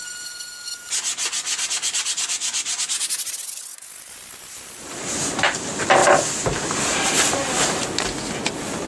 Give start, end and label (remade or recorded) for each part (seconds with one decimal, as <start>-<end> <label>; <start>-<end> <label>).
0.0-3.7 recorded; 3.7-5.6 remade; 5.6-6.0 recorded; 6.0-8.0 remade; 8.0-8.9 recorded